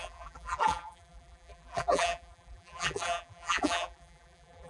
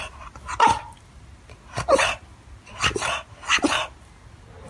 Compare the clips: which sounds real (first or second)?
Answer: second